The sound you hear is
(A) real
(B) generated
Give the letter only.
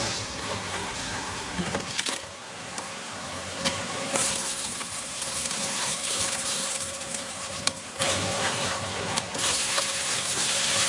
B